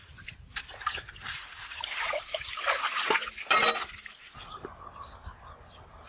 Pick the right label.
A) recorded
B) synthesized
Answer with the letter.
A